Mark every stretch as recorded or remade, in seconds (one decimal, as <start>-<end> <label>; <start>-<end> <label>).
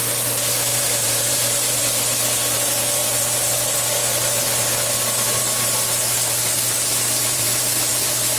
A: 0.0-0.7 recorded; 0.7-1.8 remade; 1.8-7.2 recorded; 7.2-7.9 remade; 7.9-8.4 recorded